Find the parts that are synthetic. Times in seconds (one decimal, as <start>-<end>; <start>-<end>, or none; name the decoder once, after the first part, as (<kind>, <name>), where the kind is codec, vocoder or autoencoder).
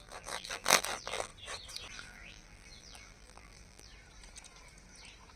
0.0-1.3 (vocoder, BigVGAN v2); 1.9-3.9